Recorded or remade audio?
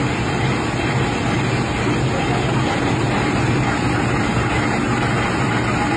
recorded